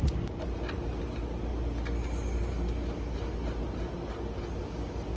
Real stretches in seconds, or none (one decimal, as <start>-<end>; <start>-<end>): 0.0-5.2